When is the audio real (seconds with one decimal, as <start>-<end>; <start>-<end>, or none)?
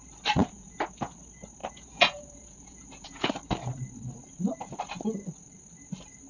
0.0-0.4; 1.1-1.6; 3.3-6.3